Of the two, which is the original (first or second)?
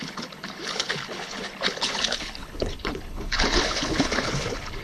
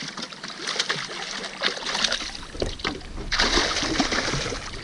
second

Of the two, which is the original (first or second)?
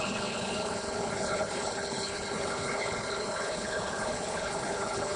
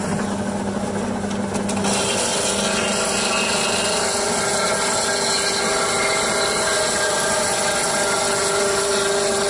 second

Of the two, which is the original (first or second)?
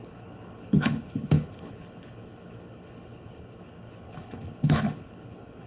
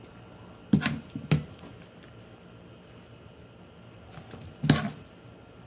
second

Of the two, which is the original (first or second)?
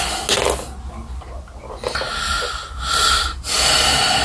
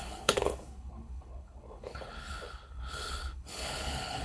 first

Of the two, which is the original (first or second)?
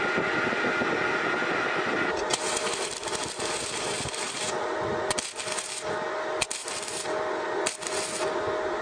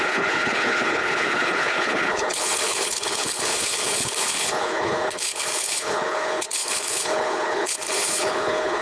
first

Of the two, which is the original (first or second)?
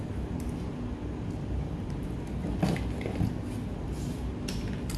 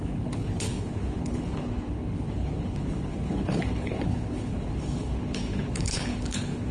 first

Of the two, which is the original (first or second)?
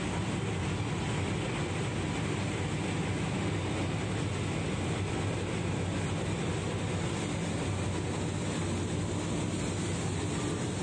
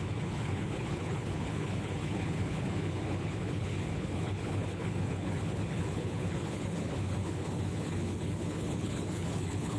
first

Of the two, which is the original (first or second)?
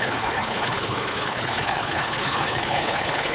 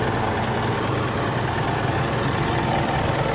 second